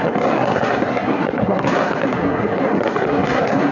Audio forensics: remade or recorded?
remade